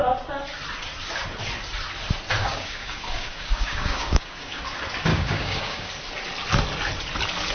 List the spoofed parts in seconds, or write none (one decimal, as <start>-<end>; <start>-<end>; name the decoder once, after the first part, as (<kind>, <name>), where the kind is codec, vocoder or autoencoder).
2.4-4.6 (codec, DAC); 5.1-5.9